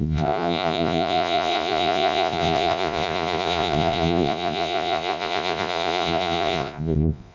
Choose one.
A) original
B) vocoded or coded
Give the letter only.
B